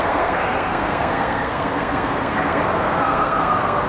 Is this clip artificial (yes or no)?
yes